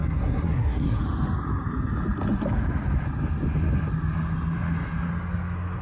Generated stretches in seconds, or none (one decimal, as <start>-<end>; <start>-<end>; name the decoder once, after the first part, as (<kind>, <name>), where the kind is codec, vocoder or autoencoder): 0.0-1.0 (codec, SNAC)